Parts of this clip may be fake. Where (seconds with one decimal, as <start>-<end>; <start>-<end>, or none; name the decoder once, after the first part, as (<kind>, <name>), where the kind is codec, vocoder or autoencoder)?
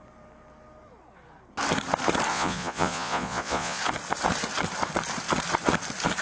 2.3-3.8 (vocoder, Vocos)